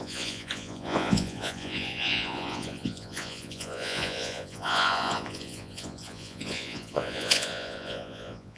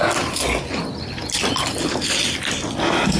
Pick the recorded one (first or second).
second